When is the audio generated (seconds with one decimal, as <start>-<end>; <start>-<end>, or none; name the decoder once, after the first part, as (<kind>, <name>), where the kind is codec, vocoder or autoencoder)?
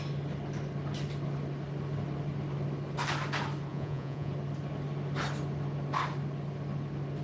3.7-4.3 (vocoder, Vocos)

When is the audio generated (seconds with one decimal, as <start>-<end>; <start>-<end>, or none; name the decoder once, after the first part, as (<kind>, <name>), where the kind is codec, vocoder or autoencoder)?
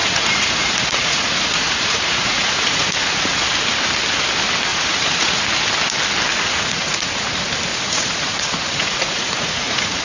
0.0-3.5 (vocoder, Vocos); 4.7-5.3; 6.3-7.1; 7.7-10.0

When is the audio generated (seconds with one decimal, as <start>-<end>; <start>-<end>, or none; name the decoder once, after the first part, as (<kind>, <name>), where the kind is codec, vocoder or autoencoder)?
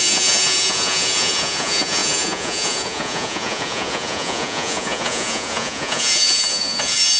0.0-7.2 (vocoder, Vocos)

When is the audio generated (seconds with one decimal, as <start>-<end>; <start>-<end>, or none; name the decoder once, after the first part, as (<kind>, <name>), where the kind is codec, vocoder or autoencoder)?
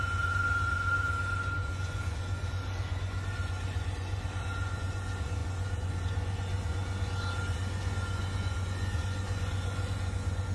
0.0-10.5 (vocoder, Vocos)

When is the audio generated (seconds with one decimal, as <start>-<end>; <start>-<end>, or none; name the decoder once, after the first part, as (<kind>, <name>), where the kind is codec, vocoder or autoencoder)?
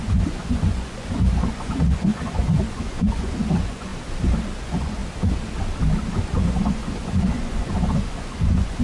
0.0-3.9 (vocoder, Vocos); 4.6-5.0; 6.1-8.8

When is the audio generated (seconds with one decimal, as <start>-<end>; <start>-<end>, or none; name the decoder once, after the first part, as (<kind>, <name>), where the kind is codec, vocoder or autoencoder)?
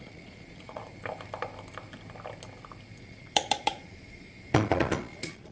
0.0-0.8 (vocoder, Vocos); 3.0-5.5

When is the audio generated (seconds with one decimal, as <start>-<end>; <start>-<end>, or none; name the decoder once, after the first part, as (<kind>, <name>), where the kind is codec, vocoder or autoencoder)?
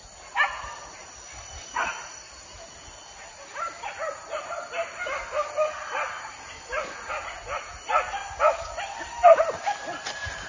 none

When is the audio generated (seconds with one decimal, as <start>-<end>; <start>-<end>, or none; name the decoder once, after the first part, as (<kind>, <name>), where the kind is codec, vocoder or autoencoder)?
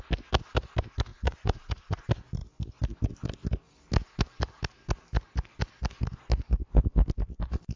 1.1-2.0 (vocoder, Vocos)